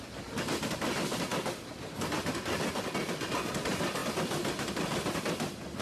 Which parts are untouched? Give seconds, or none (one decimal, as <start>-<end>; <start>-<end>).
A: 0.0-5.8